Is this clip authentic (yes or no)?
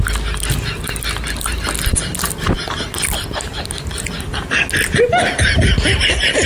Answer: yes